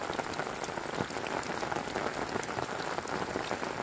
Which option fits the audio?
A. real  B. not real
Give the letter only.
A